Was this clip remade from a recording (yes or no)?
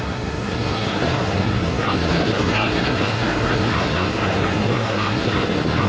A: yes